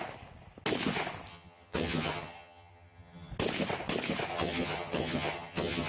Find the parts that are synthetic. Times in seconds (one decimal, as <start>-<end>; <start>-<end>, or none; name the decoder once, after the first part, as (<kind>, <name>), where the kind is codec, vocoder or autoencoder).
1.3-3.3 (vocoder, HiFi-GAN); 4.3-5.9